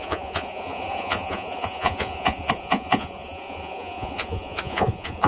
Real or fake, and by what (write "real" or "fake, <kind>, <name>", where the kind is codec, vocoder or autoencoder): fake, vocoder, Vocos